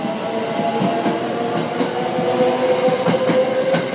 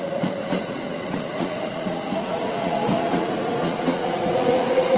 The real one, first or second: first